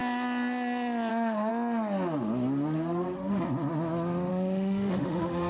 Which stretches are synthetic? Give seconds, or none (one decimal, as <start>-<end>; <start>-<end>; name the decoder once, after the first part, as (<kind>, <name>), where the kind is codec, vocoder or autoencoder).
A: 1.1-1.5 (autoencoder, DAC-VAE); 4.3-5.5